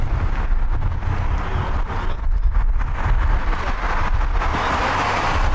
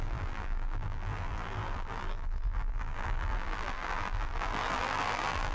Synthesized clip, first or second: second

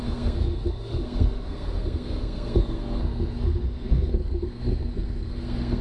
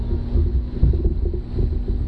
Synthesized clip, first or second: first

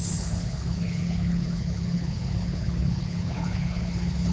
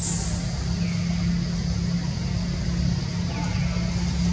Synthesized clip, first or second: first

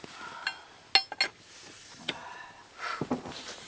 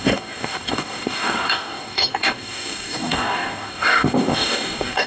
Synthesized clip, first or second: second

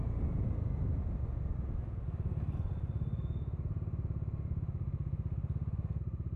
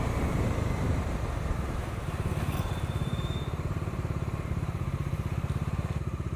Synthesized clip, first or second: second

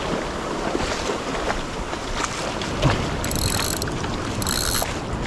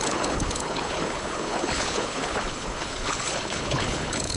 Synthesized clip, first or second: second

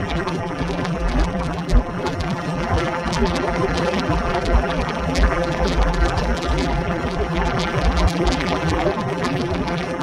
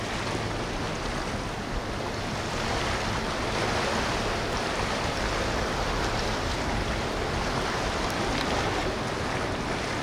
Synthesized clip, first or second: first